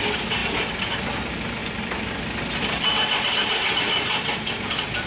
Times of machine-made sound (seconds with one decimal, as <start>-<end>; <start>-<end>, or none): none

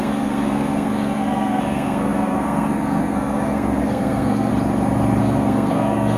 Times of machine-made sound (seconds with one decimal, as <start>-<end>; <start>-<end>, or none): 0.0-4.5; 5.2-6.2

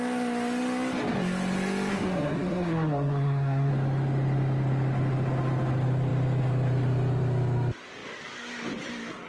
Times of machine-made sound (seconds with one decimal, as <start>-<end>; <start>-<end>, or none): 1.9-3.7

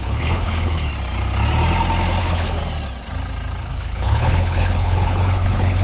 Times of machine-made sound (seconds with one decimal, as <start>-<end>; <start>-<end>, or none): 0.0-0.9; 2.2-2.6; 3.6-5.8

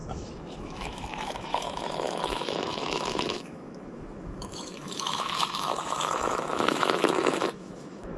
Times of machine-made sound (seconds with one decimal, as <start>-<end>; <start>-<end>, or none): 0.0-8.2